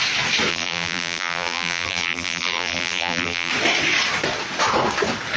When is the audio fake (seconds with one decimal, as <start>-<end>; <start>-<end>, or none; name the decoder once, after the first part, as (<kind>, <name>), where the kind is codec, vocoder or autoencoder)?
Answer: 0.5-3.5 (vocoder, BigVGAN v2)